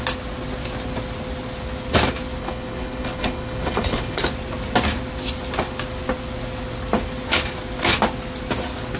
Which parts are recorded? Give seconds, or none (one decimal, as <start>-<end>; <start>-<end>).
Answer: 0.0-2.4; 4.2-9.0